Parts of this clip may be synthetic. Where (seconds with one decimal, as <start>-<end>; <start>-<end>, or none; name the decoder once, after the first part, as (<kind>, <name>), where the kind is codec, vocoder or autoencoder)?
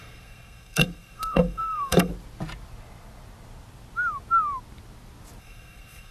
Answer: 0.0-2.1 (codec, SNAC); 5.4-6.1